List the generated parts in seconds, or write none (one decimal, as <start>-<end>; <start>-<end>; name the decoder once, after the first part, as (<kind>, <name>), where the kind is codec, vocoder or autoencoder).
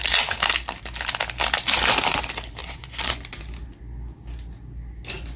2.6-3.2 (vocoder, Vocos)